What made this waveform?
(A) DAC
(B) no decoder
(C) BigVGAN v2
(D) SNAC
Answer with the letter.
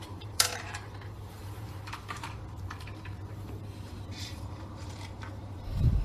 C